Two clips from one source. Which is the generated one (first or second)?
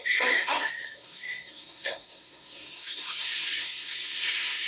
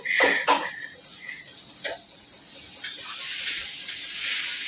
first